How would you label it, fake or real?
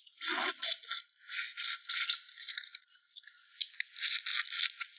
real